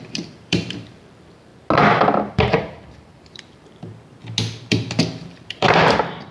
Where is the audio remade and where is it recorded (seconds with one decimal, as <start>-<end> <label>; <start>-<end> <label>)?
0.0-1.5 remade; 1.5-2.3 recorded; 2.3-3.9 remade; 3.9-4.6 recorded; 4.6-6.3 remade